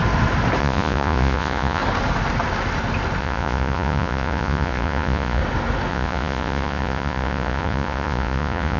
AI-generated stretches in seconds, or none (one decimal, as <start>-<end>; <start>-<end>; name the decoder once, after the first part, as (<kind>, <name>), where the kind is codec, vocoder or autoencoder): 0.6-1.8 (vocoder, Vocos); 3.2-5.4; 5.9-8.8